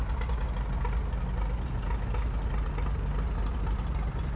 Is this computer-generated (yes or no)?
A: no